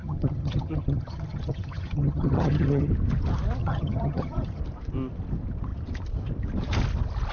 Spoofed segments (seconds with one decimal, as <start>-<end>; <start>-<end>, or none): 0.0-2.9; 3.6-4.6